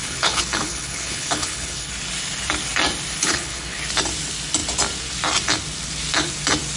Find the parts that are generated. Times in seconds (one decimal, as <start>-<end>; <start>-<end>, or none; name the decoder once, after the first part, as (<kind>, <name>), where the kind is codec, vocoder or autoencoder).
0.0-1.9 (codec, HILCodec); 3.2-3.8